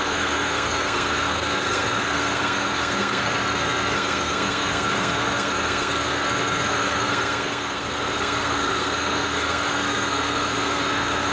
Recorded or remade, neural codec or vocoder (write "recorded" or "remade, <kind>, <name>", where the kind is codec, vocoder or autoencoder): remade, codec, SNAC